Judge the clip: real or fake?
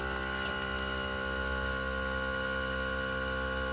real